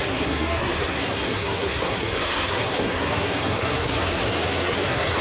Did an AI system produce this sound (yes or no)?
yes